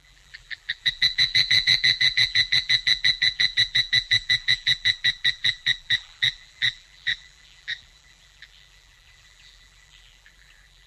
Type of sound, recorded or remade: remade